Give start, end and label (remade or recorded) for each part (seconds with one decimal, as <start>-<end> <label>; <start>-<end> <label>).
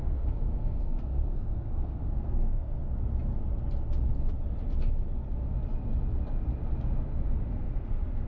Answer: 0.0-2.8 remade; 2.8-7.4 recorded; 7.4-8.3 remade